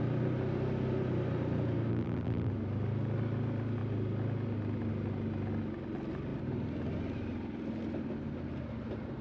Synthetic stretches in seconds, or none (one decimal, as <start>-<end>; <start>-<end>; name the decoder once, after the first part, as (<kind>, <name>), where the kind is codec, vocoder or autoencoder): 1.9-2.5 (vocoder, BigVGAN v2)

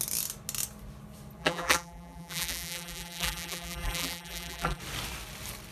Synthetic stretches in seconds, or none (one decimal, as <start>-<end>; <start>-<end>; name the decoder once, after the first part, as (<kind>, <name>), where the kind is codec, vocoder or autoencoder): 1.4-4.8 (vocoder, BigVGAN v2)

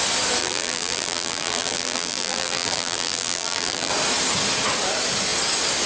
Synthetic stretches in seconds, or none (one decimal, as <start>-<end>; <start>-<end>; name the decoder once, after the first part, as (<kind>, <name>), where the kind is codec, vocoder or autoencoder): 0.4-3.9 (vocoder, BigVGAN v2)

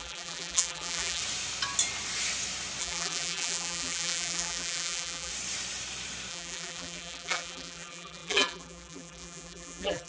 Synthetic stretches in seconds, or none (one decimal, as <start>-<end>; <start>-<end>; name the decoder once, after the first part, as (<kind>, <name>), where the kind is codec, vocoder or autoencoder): 0.0-1.2 (vocoder, BigVGAN v2); 2.8-5.3; 6.3-10.1

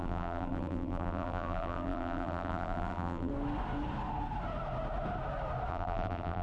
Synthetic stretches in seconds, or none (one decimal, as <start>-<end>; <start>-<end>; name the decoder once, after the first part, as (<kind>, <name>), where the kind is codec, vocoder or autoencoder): 0.0-3.3 (vocoder, BigVGAN v2); 5.7-6.4

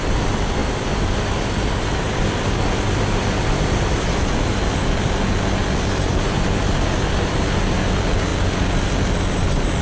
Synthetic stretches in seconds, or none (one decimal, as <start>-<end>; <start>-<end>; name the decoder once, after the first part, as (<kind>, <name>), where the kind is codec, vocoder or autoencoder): 0.6-2.2 (vocoder, BigVGAN v2); 6.1-6.6